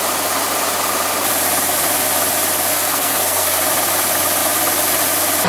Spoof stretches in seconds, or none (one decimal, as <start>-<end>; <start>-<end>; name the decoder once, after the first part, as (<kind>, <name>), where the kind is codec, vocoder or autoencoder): 2.7-3.6 (codec, SNAC)